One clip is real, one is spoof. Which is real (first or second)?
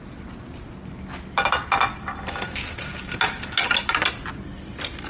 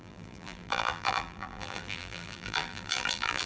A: first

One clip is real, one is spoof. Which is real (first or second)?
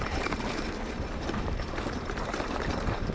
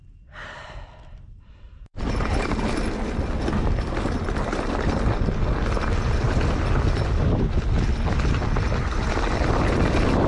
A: second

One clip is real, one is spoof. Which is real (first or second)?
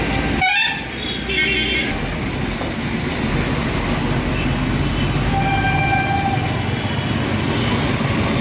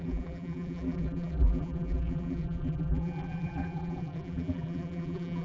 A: first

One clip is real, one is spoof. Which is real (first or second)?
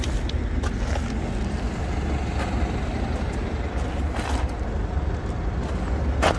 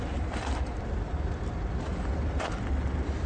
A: first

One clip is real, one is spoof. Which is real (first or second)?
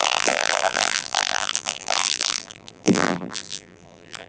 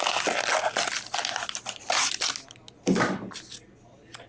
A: second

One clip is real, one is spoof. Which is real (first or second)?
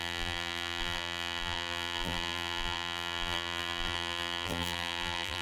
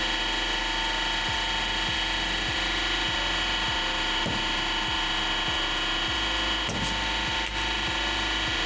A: second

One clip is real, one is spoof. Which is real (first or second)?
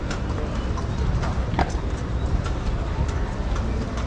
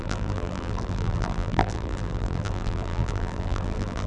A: first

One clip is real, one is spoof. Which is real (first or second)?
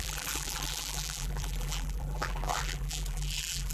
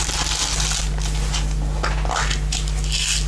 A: second